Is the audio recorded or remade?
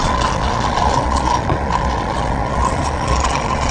remade